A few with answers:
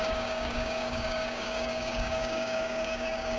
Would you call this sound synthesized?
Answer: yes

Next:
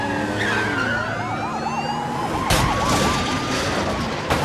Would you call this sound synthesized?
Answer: no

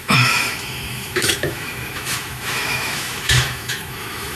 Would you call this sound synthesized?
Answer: yes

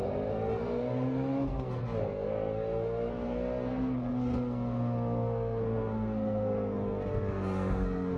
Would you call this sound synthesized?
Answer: yes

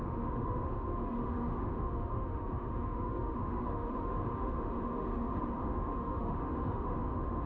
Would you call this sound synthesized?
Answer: yes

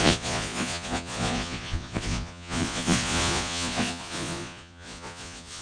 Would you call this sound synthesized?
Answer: yes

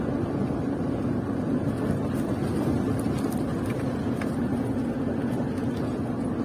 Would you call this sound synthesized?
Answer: no